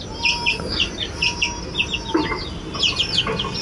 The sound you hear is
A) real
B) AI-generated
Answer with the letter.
A